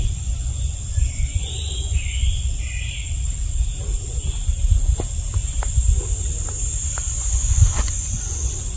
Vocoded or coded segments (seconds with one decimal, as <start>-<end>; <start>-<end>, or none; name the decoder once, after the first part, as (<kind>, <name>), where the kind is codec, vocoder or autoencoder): 0.0-2.4 (vocoder, Vocos); 7.0-8.8